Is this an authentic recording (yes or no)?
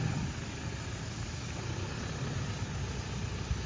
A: yes